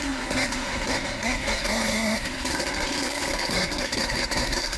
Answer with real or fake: fake